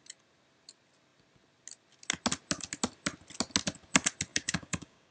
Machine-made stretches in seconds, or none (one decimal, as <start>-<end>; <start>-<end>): 4.3-5.1